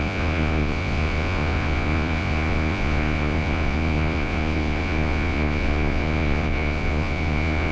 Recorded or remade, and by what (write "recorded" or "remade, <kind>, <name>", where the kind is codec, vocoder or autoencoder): remade, vocoder, Vocos